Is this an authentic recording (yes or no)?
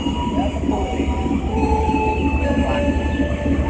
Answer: yes